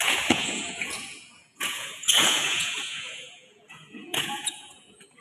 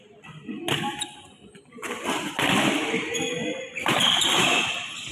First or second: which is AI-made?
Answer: first